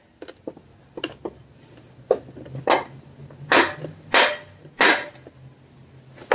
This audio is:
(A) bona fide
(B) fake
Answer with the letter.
A